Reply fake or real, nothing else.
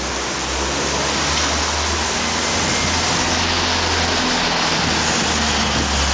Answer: real